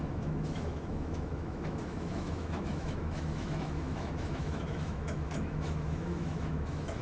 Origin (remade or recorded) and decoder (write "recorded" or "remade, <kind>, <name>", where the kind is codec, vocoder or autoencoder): remade, autoencoder, DAC-VAE